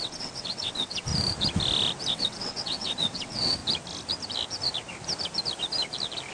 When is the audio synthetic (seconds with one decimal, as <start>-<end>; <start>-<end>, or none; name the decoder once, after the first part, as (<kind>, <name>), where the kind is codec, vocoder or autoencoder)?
0.0-1.1 (vocoder, WaveNeXt); 2.0-3.6